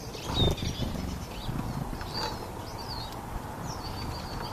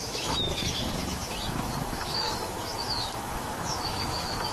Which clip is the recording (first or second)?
first